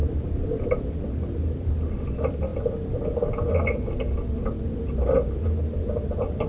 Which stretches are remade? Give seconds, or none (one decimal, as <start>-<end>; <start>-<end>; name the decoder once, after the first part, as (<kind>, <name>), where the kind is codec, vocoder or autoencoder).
none